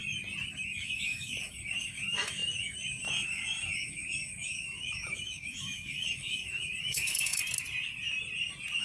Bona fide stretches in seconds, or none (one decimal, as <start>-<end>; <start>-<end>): 0.0-0.5; 7.4-8.8